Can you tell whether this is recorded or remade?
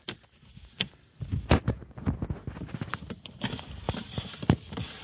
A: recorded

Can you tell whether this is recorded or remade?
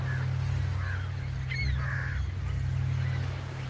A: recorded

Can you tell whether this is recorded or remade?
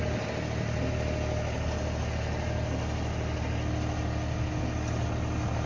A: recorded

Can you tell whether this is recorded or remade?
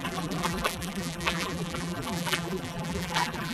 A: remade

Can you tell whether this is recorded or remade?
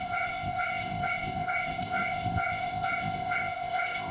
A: remade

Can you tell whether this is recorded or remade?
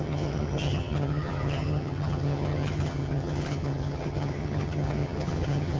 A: remade